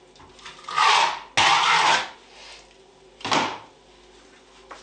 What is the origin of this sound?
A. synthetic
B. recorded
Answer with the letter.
B